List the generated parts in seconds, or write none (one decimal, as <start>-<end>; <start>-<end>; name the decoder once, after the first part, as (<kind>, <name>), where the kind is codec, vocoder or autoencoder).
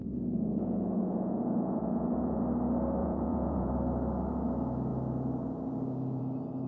0.0-2.4 (vocoder, Vocos); 3.0-3.7